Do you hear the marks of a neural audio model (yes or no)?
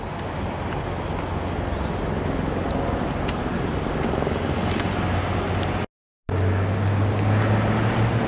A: no